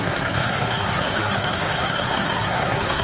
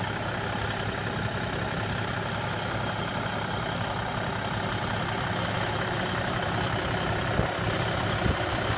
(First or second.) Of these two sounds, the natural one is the second